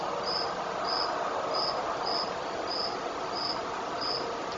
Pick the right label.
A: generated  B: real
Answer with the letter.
B